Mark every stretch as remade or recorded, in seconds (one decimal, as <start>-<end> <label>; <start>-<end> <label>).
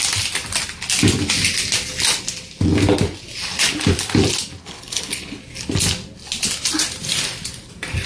0.0-4.6 recorded; 4.6-5.4 remade; 5.4-8.1 recorded